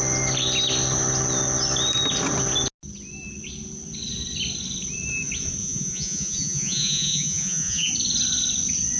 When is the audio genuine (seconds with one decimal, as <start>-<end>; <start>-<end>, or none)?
0.0-5.6; 7.9-9.0